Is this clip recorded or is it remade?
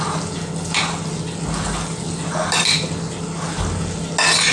recorded